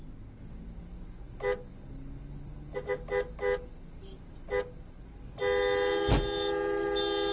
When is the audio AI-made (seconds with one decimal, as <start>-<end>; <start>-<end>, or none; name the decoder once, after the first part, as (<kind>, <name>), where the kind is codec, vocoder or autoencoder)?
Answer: none